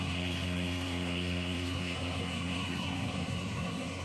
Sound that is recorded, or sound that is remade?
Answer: remade